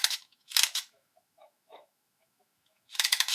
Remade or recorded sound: remade